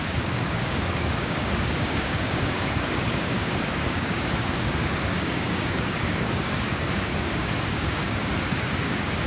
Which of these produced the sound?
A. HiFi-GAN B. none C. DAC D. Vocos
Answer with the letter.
C